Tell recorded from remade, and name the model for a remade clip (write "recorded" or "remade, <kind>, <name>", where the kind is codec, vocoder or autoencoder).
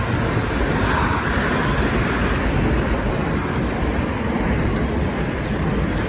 recorded